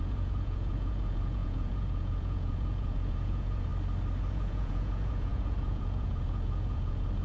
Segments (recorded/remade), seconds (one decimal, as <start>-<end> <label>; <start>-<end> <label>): 0.0-3.7 remade; 3.7-4.3 recorded; 4.3-7.2 remade